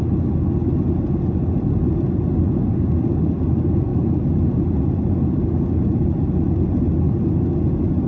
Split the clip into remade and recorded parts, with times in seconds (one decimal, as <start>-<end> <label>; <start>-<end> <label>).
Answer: 0.0-8.1 recorded